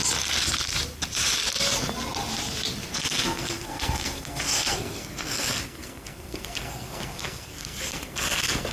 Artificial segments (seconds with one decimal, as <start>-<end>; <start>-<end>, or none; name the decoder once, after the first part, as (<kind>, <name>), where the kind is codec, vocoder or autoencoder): 2.9-8.7 (codec, SNAC)